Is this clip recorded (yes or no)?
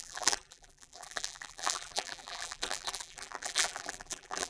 no